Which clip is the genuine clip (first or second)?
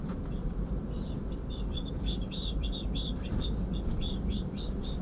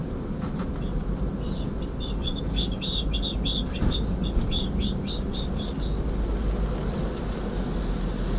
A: second